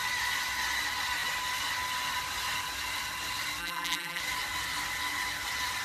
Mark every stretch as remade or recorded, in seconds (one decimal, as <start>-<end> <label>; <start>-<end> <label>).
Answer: 0.0-3.6 recorded; 3.6-4.2 remade; 4.2-5.8 recorded